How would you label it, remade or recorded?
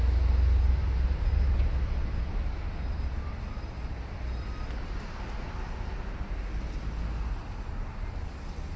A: recorded